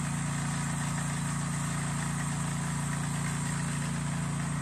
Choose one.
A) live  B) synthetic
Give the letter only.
A